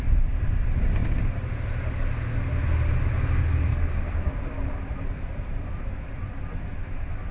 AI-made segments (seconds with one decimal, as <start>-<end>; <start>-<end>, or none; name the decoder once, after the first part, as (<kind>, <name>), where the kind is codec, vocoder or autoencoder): 3.7-4.2 (codec, SNAC)